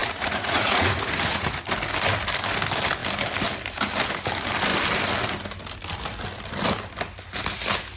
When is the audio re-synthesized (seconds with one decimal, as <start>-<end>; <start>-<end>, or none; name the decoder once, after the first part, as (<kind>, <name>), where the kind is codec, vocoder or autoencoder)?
0.0-1.6 (vocoder, Vocos)